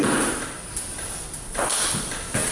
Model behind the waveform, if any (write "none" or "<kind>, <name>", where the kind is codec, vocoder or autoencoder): none